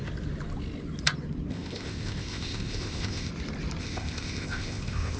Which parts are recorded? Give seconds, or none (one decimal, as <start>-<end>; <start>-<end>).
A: 0.0-1.5; 3.3-3.8

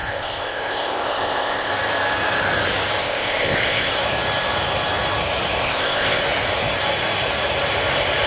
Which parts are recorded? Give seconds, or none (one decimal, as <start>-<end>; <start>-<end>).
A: 1.7-3.0; 3.9-5.6; 6.2-8.3

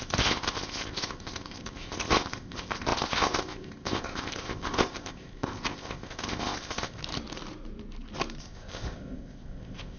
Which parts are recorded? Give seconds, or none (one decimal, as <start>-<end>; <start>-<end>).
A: 7.0-8.4

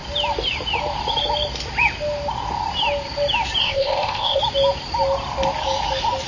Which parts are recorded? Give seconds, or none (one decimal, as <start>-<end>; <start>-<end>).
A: 0.0-3.6; 4.4-6.3

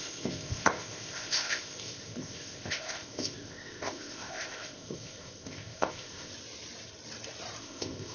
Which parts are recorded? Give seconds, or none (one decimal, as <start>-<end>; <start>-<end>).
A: 6.3-7.6